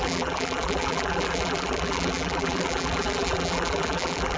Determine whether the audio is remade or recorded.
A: remade